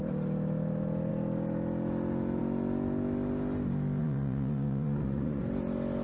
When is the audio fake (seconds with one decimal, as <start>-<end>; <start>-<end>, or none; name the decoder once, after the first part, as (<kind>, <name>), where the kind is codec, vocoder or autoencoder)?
4.0-5.4 (vocoder, Vocos)

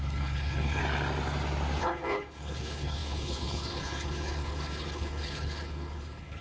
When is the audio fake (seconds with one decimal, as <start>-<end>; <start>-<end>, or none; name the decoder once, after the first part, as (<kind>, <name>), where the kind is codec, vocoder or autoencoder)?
0.0-0.8 (codec, HILCodec); 1.8-6.4

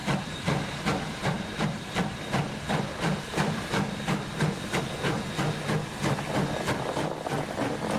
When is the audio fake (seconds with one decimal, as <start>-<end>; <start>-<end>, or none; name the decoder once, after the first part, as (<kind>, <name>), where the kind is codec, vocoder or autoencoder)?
0.0-4.8 (vocoder, BigVGAN v2)

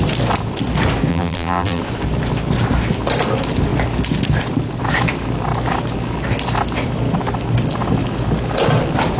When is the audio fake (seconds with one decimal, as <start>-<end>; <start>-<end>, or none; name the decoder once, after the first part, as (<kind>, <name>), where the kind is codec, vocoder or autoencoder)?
1.1-1.8 (vocoder, BigVGAN v2)

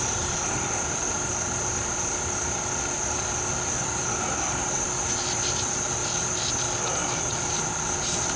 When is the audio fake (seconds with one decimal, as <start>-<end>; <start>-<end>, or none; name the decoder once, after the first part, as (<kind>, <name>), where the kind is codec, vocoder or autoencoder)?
none

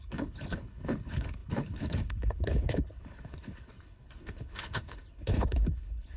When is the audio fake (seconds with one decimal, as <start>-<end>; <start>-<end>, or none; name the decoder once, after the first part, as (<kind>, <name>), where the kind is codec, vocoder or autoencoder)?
0.0-6.2 (codec, HILCodec)

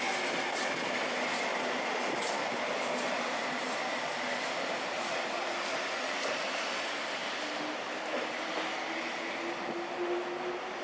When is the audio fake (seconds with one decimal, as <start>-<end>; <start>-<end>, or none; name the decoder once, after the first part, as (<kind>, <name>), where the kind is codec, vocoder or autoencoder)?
none

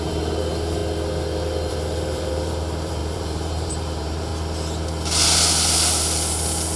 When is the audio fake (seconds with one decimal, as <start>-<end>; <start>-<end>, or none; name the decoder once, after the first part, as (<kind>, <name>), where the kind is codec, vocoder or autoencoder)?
0.0-0.8 (vocoder, BigVGAN v2); 1.7-4.3